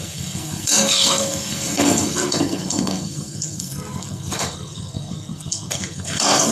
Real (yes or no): no